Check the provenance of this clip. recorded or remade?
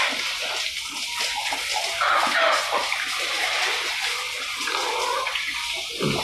recorded